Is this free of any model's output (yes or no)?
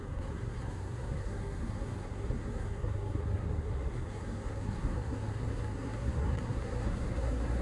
no